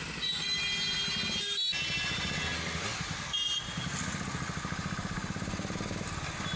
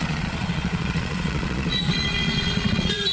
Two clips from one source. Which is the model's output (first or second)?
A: second